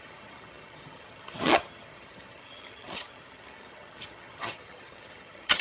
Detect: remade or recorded remade